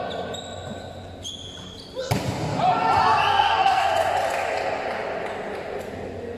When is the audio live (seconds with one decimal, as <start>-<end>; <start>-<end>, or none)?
0.0-3.3; 3.9-6.4